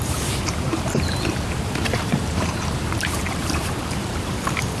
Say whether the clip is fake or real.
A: fake